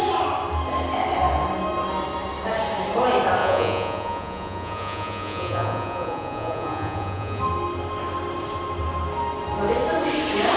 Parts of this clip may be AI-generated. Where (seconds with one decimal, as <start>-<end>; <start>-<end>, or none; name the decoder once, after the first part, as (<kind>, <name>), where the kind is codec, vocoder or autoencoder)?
3.4-7.4 (vocoder, Vocos)